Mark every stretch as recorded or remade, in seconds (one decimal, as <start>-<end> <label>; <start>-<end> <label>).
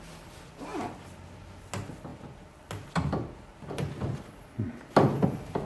0.0-5.7 recorded